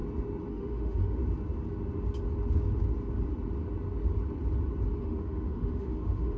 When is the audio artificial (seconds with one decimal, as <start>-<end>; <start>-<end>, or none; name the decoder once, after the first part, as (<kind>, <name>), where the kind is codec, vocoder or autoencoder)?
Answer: 0.5-1.2 (autoencoder, DAC-VAE); 5.0-6.4